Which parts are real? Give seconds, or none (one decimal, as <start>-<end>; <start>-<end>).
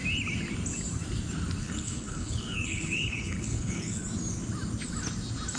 0.0-1.6; 4.0-5.6